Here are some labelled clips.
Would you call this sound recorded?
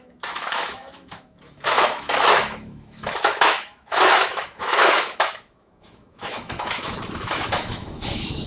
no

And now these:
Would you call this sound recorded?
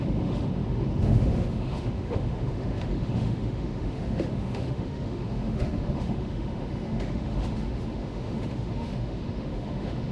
no